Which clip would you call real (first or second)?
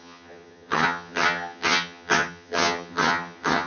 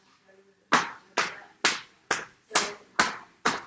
second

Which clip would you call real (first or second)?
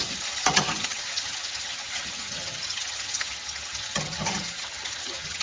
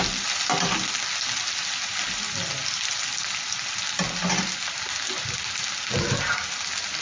second